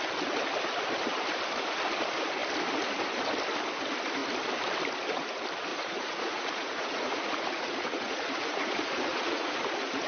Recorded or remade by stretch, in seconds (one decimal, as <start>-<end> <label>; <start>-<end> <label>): 0.0-5.7 recorded; 5.7-9.7 remade; 9.7-10.1 recorded